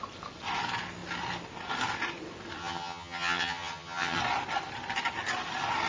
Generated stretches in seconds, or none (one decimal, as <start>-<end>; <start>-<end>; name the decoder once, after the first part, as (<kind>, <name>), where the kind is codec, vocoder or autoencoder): 2.6-4.2 (vocoder, HiFi-GAN)